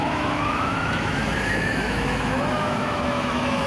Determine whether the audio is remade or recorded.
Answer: remade